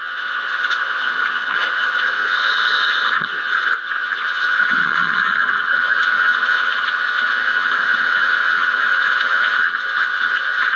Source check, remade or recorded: remade